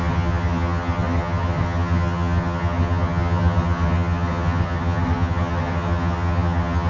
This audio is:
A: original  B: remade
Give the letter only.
B